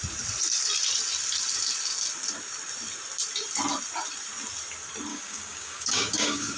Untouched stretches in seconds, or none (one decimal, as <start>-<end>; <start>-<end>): 0.0-5.1